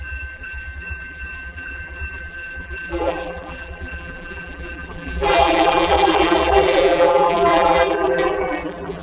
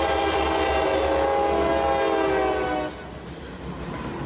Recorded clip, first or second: second